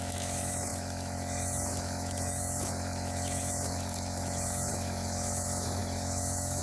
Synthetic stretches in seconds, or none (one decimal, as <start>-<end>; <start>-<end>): 0.0-6.6